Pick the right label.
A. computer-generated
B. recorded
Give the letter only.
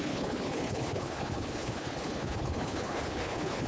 A